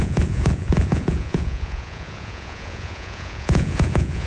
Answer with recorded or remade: remade